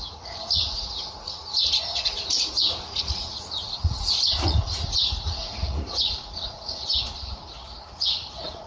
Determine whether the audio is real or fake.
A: fake